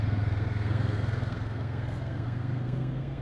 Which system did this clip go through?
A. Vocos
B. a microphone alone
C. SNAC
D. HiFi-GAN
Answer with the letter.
C